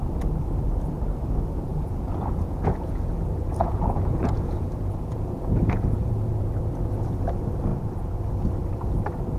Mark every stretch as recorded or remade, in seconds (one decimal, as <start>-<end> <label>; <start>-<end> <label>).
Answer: 0.0-1.7 recorded; 1.7-6.4 remade; 6.4-7.7 recorded; 7.7-8.2 remade; 8.2-9.4 recorded